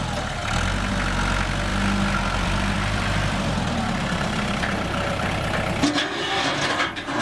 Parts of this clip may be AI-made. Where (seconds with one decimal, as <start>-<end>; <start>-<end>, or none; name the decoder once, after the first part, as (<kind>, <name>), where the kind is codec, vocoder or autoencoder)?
1.7-5.3 (vocoder, BigVGAN v2)